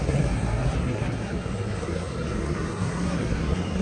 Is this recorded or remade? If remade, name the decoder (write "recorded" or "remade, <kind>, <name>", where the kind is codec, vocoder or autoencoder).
remade, codec, SNAC